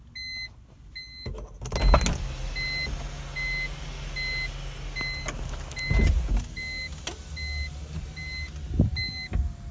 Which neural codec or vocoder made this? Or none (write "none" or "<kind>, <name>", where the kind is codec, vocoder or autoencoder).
none